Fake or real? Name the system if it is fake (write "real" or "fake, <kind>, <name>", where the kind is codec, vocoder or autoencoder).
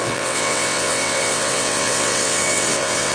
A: fake, vocoder, WaveNeXt